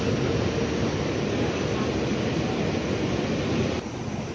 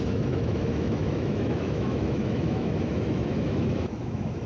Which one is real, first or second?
first